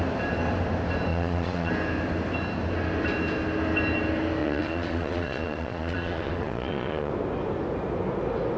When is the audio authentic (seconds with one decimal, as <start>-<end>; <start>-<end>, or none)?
0.0-1.1; 1.7-4.4; 7.1-8.6